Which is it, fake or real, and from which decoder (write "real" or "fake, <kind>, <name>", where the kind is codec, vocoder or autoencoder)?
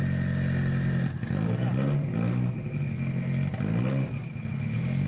real